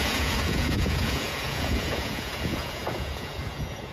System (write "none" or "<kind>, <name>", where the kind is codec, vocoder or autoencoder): vocoder, Vocos